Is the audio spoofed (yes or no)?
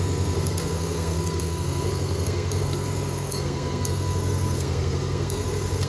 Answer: yes